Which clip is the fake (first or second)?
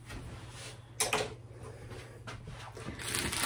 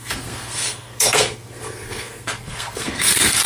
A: second